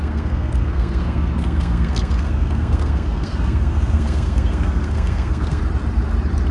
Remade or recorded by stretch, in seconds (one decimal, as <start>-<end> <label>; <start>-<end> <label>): 0.0-5.6 remade; 5.6-6.5 recorded